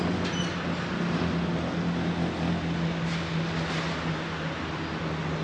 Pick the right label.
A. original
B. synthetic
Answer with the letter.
A